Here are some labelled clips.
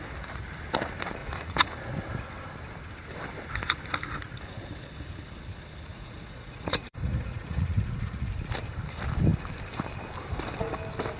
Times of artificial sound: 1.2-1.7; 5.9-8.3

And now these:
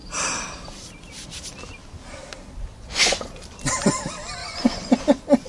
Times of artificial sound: 2.7-3.3; 4.4-5.0

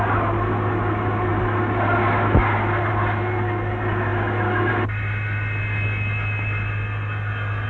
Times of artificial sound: none

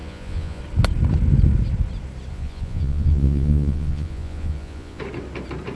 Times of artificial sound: 0.0-0.6; 2.3-5.0